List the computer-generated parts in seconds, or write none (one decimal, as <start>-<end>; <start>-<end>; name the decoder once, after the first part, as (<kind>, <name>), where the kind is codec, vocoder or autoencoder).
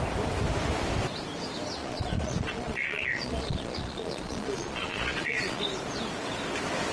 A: 1.8-5.6 (vocoder, Vocos)